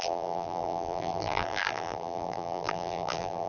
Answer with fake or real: fake